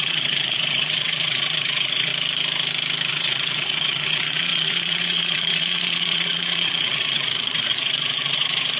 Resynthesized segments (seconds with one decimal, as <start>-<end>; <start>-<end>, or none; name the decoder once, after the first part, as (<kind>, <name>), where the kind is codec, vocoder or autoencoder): 0.0-2.1 (vocoder, Vocos); 3.1-8.8